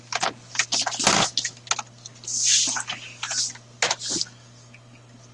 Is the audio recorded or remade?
recorded